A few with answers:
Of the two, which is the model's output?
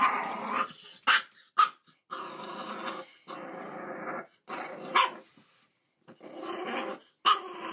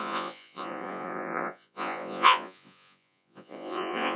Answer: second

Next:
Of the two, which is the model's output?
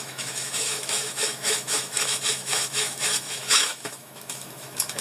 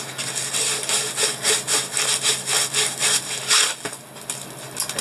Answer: first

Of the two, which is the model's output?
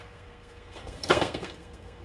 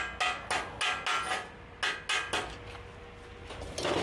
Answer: first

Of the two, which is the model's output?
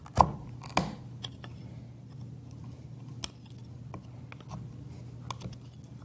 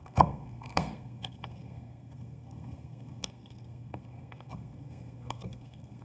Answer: second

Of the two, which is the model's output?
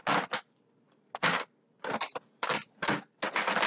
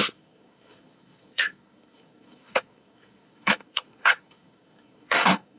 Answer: second